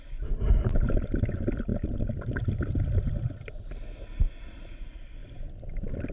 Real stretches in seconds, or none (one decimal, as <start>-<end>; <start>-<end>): 0.0-6.1